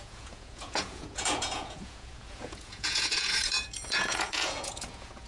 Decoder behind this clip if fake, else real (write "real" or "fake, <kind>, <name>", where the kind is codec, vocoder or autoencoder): fake, vocoder, Vocos